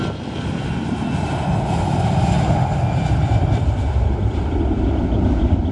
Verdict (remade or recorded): recorded